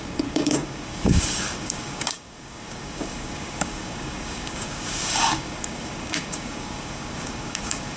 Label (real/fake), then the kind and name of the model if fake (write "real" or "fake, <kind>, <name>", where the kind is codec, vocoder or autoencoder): fake, codec, DAC